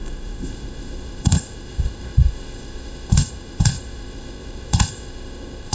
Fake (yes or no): yes